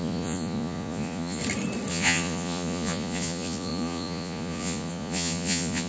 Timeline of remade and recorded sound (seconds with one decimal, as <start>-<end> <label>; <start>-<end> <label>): 0.0-1.4 remade; 1.4-1.9 recorded; 1.9-5.9 remade